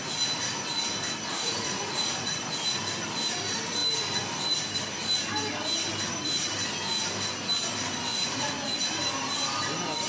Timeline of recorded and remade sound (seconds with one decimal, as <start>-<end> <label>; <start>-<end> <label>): 0.0-1.3 recorded; 1.3-2.4 remade; 2.4-8.1 recorded; 8.1-8.6 remade; 8.6-10.1 recorded